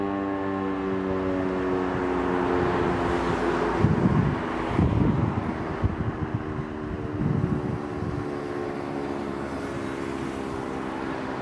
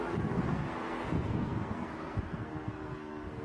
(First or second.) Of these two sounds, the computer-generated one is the second